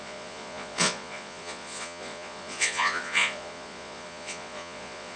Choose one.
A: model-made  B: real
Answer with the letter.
A